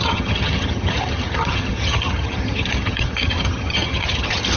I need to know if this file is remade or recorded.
remade